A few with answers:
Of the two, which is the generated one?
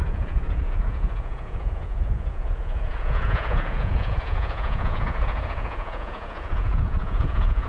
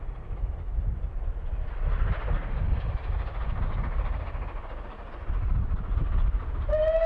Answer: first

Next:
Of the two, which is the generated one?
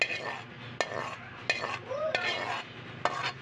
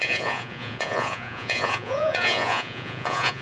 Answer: second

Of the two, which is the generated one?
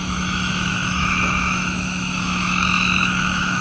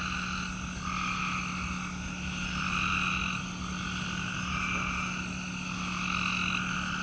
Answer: first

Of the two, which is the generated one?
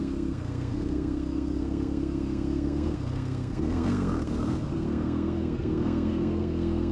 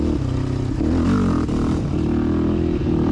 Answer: first